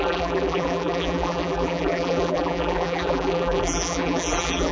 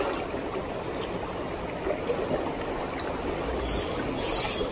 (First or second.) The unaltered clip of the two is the second